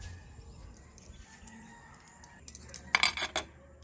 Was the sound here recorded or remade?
recorded